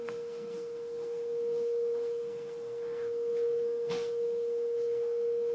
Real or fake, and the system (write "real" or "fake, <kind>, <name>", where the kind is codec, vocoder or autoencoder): fake, codec, SNAC